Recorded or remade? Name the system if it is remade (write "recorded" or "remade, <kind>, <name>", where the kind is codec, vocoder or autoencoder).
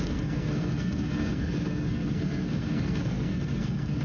remade, codec, SNAC